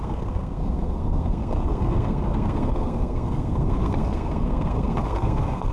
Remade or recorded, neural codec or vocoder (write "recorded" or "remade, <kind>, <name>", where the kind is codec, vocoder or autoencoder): remade, codec, SNAC